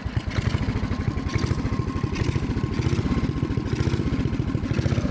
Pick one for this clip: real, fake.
real